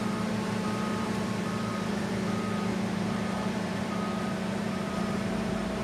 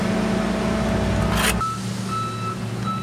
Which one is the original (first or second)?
second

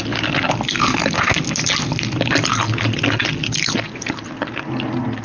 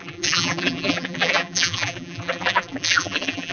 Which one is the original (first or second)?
first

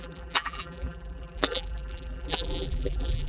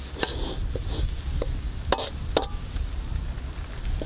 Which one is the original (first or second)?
second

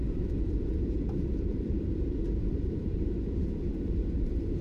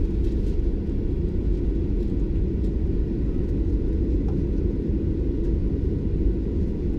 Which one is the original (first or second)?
second